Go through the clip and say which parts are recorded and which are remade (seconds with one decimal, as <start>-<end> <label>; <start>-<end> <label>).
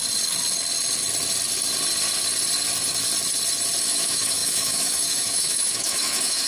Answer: 0.0-3.9 recorded; 3.9-6.5 remade